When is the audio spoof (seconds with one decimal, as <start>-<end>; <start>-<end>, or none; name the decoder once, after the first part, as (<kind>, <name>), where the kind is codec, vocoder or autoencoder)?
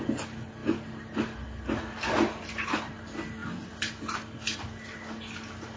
0.6-1.8 (vocoder, BigVGAN v2)